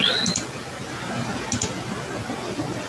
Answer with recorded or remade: recorded